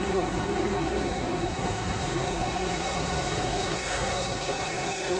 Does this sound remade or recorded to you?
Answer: remade